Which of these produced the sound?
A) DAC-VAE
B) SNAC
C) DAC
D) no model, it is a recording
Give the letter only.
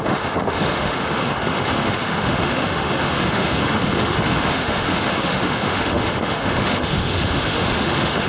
A